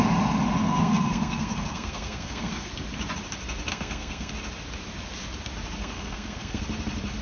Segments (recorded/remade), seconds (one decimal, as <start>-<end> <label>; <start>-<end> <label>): 0.0-0.6 recorded; 0.6-2.7 remade; 2.7-3.7 recorded; 3.7-4.3 remade; 4.3-5.8 recorded; 5.8-6.6 remade; 6.6-7.2 recorded